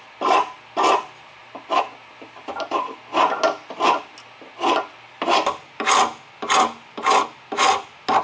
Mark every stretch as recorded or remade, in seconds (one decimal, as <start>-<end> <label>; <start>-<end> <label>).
0.0-8.2 recorded